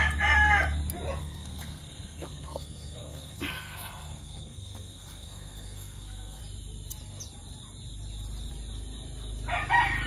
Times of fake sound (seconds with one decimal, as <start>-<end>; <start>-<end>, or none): 1.2-6.4